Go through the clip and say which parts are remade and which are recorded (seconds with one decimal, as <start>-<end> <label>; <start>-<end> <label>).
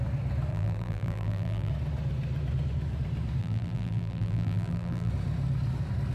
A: 0.0-0.5 recorded; 0.5-1.7 remade; 1.7-3.4 recorded; 3.4-5.1 remade; 5.1-6.1 recorded